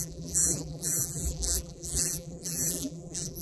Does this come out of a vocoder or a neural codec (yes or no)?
yes